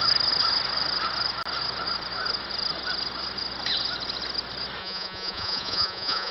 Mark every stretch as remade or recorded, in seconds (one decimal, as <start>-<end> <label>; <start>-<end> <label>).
0.0-4.8 recorded; 4.8-6.3 remade